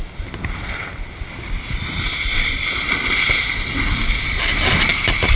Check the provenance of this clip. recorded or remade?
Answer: recorded